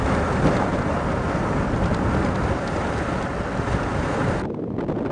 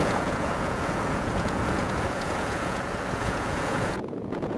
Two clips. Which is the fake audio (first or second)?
second